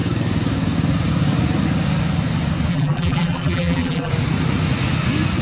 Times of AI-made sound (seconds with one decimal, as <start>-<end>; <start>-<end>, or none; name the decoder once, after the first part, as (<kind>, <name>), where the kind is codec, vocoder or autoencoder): 2.7-4.1 (vocoder, BigVGAN v2)